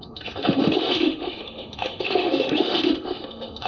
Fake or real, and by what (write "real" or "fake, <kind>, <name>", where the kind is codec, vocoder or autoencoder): fake, autoencoder, DAC-VAE